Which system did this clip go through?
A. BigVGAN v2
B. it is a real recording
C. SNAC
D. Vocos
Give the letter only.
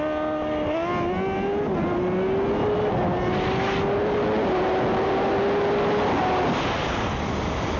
B